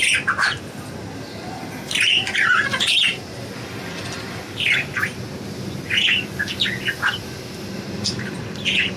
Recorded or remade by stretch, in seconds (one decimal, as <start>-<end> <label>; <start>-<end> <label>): 0.0-9.0 recorded